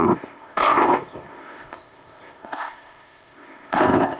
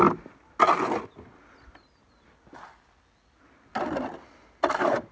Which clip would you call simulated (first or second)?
first